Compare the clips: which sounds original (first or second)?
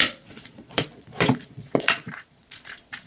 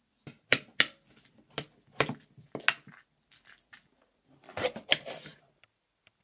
second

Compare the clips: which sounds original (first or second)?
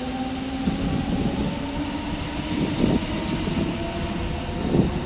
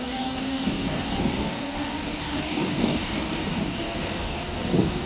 first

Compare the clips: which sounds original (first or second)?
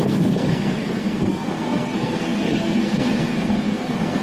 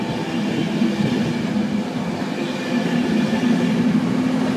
second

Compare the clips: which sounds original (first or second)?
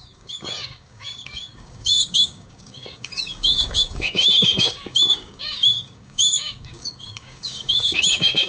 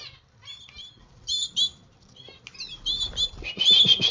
second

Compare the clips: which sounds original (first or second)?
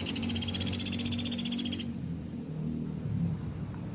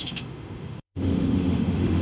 first